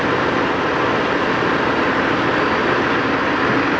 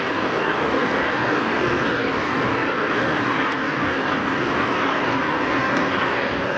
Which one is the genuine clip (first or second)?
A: first